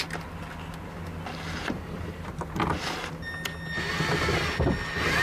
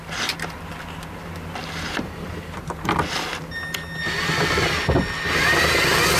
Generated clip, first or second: second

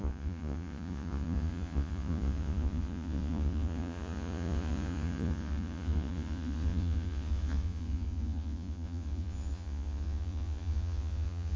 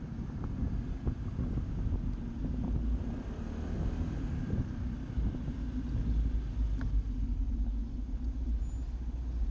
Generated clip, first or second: first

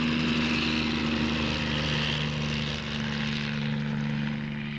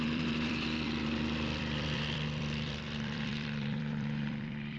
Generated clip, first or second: second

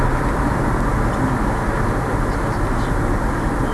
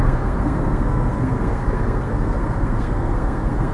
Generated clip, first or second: second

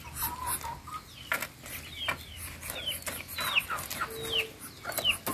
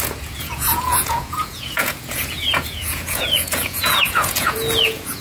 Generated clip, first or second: second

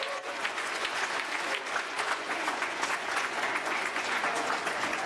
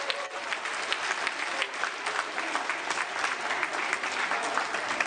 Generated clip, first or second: first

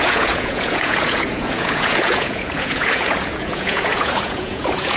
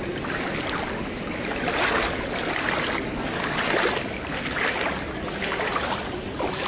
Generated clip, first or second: first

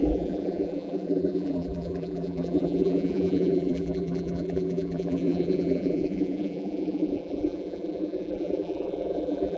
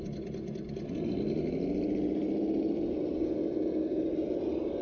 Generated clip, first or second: first